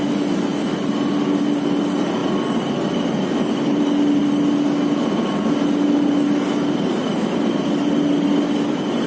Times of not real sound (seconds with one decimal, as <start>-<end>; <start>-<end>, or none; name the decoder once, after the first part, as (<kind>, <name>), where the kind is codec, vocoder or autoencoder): none